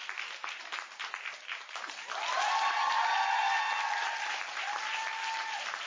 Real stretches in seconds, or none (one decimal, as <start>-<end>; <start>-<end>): 0.0-5.9